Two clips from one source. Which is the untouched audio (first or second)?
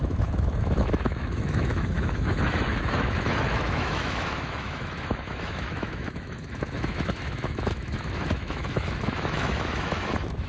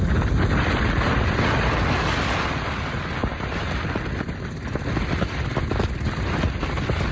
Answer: second